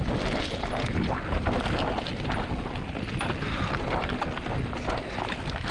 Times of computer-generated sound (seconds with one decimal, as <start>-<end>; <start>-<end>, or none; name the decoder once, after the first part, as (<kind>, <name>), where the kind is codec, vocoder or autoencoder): none